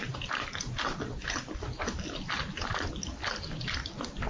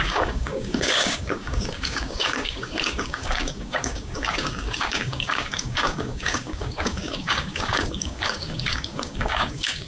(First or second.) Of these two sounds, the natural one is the first